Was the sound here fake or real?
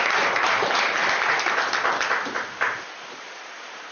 real